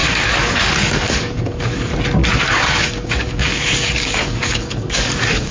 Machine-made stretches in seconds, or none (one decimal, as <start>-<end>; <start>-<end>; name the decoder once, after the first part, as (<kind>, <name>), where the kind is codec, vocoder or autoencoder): 0.0-1.9 (codec, DAC); 2.4-5.5